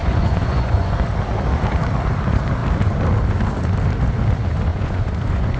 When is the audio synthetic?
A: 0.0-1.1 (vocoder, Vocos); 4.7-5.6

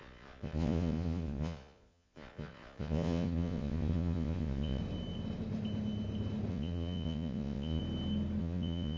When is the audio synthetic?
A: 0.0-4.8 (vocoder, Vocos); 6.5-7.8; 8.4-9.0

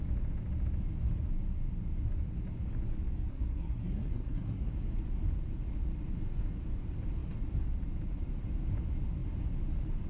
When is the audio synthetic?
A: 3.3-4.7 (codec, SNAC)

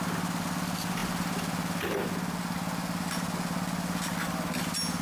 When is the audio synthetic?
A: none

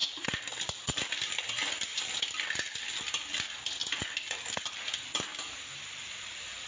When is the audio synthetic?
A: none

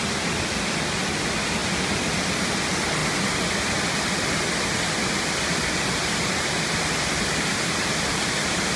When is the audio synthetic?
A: none

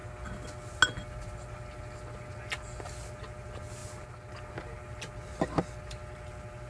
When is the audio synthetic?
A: none